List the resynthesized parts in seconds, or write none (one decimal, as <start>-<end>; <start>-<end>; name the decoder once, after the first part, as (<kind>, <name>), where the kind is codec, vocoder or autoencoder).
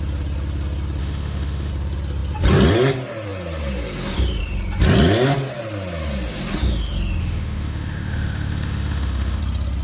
1.0-1.7 (autoencoder, DAC-VAE); 7.2-9.4